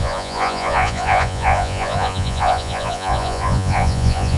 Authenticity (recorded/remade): remade